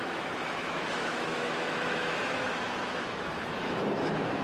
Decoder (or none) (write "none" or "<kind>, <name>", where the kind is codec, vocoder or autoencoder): autoencoder, DAC-VAE